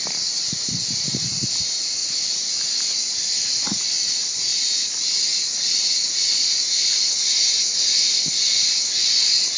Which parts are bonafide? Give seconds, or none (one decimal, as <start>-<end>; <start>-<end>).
0.0-9.6